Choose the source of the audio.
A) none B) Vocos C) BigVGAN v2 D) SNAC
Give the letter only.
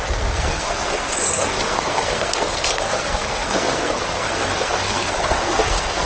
D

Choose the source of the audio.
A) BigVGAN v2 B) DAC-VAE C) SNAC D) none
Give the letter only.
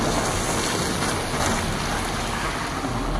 D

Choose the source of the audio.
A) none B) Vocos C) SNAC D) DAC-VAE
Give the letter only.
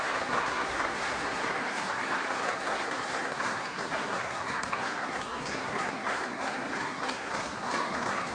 C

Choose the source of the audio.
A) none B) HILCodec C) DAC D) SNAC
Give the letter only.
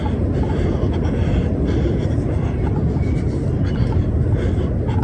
A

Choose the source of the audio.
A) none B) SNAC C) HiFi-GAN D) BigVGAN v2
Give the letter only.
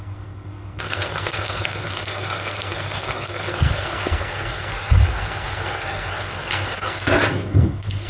B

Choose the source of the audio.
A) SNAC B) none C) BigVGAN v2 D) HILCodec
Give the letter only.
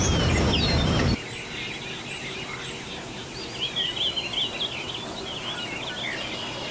B